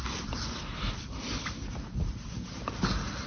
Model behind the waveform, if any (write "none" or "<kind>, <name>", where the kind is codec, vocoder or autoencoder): none